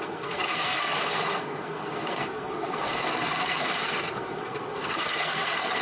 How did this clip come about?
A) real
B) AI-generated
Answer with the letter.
B